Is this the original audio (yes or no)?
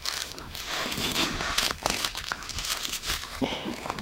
no